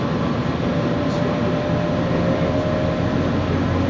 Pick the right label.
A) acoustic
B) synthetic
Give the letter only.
A